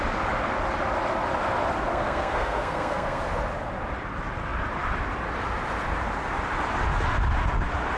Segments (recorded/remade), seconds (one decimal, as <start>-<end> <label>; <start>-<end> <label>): 0.0-1.9 recorded; 1.9-3.2 remade; 3.2-8.0 recorded